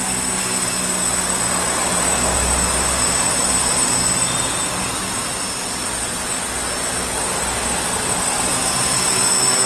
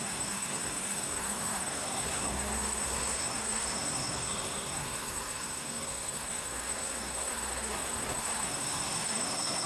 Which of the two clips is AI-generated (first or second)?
second